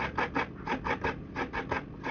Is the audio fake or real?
real